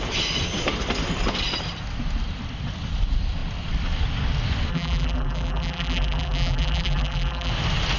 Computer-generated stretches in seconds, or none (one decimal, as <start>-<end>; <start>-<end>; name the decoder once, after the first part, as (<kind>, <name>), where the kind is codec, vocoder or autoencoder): 4.7-7.5 (vocoder, BigVGAN v2)